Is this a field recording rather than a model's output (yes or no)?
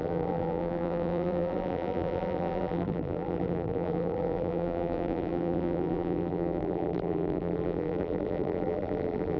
no